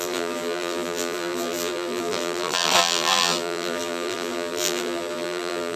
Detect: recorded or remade remade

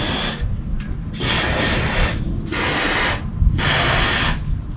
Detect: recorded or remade recorded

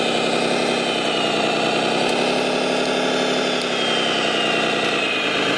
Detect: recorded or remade recorded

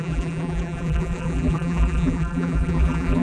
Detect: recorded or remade remade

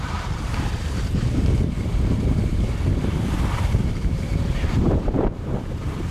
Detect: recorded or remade remade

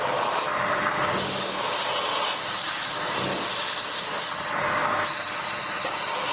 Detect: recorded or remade recorded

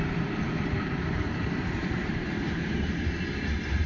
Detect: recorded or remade remade